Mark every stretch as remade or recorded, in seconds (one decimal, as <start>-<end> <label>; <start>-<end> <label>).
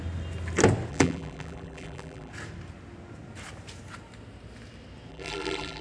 0.0-0.9 recorded; 0.9-2.3 remade; 2.3-5.1 recorded; 5.1-5.8 remade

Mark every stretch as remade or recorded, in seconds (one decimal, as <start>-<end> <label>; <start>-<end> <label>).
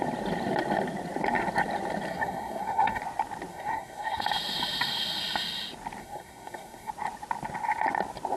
0.0-2.1 recorded; 2.1-3.0 remade; 3.0-3.5 recorded; 3.5-4.2 remade; 4.2-6.0 recorded; 6.0-6.9 remade; 6.9-8.4 recorded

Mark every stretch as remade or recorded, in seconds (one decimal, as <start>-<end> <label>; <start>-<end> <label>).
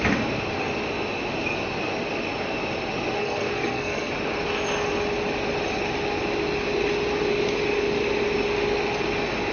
0.0-3.2 recorded; 3.2-4.1 remade; 4.1-9.5 recorded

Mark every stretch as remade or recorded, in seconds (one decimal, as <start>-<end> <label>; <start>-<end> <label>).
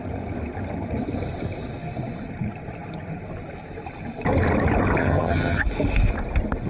0.0-5.0 recorded; 5.0-5.6 remade; 5.6-6.7 recorded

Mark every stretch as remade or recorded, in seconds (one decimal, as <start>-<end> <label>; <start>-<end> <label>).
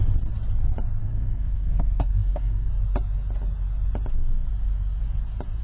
0.0-1.0 recorded; 1.0-2.7 remade; 2.7-5.6 recorded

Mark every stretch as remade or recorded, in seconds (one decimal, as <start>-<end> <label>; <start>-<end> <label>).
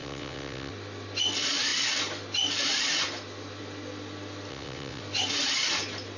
0.0-0.7 remade; 0.7-4.5 recorded; 4.5-5.0 remade; 5.0-6.2 recorded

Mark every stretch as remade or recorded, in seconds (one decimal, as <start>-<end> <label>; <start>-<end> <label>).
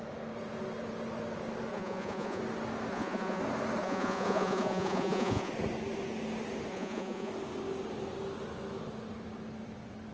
0.0-1.7 recorded; 1.7-2.4 remade; 2.4-2.9 recorded; 2.9-3.4 remade; 3.4-3.8 recorded; 3.8-5.5 remade; 5.5-6.7 recorded; 6.7-7.3 remade; 7.3-10.1 recorded